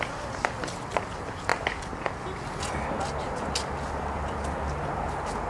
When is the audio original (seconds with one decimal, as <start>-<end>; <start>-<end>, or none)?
0.0-5.5